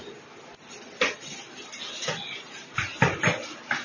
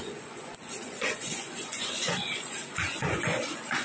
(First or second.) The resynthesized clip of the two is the second